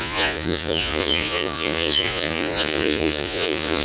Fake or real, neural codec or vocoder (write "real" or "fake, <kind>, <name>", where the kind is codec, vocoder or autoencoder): fake, vocoder, Vocos